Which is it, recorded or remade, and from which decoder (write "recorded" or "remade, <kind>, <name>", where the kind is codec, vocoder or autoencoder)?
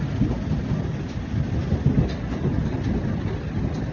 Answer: recorded